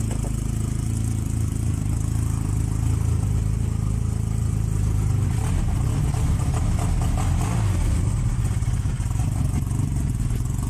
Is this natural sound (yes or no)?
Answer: yes